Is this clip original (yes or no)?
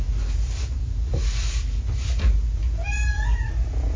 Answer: yes